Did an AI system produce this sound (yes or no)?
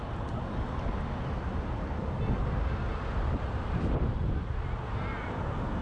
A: no